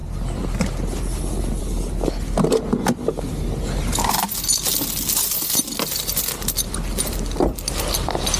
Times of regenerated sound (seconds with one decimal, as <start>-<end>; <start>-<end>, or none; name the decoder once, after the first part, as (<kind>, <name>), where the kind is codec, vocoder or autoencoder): none